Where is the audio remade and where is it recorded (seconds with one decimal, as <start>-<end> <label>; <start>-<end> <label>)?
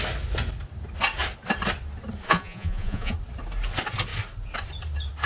0.0-2.2 recorded; 2.2-3.1 remade; 3.1-5.3 recorded